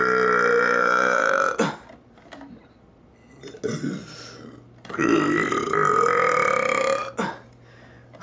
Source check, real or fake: real